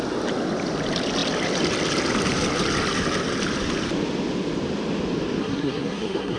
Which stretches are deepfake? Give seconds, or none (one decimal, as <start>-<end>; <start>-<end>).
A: 5.4-6.4